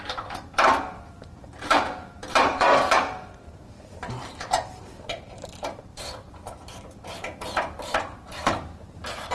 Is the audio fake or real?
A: fake